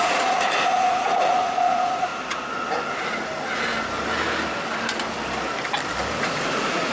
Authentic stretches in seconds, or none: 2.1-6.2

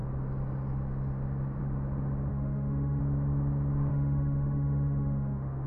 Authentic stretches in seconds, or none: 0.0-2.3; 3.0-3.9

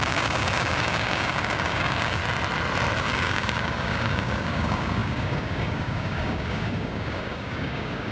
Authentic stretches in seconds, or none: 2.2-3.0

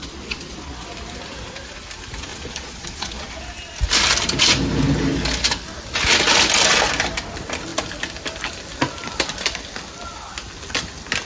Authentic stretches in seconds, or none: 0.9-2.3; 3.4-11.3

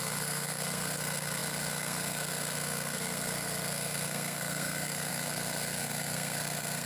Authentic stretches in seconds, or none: none